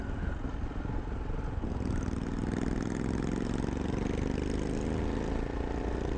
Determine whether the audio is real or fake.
real